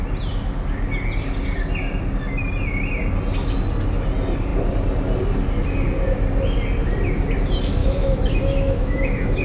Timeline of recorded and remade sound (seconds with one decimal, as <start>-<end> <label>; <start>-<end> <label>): 0.0-7.8 recorded; 7.8-9.4 remade